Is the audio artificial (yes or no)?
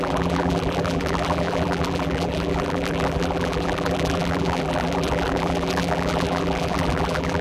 yes